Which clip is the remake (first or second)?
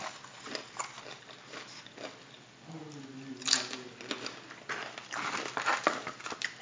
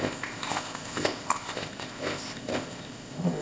second